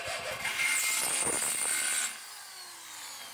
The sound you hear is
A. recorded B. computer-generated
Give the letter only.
A